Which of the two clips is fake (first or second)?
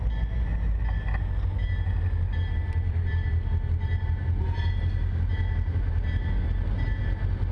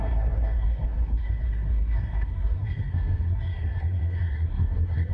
second